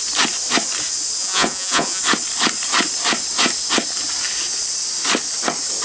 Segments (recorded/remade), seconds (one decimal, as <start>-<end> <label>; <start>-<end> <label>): 0.0-1.2 recorded; 1.2-2.0 remade; 2.0-5.8 recorded